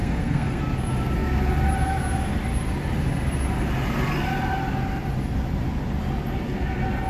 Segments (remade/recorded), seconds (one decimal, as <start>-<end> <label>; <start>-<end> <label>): 0.0-0.6 remade; 0.6-7.1 recorded